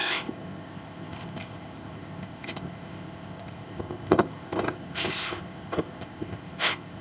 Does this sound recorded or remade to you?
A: remade